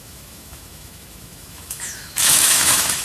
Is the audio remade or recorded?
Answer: remade